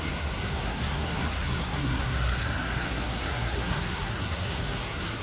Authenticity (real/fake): fake